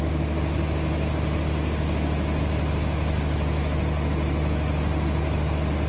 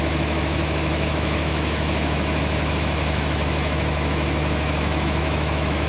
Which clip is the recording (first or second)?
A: first